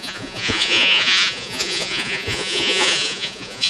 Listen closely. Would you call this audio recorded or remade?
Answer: remade